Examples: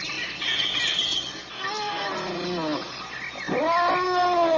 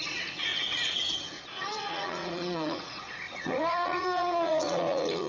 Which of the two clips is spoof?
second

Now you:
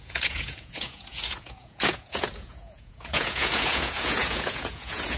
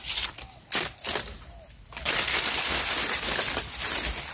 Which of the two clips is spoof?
first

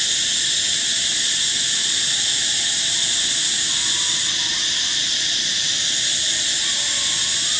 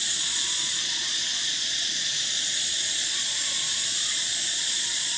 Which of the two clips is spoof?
second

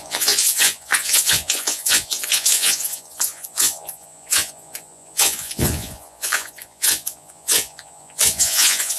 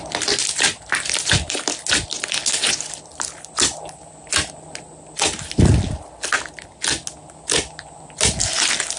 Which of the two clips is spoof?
first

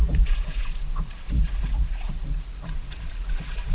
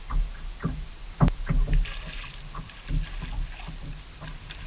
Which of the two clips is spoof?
first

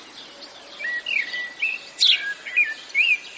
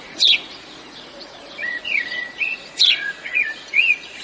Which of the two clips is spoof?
second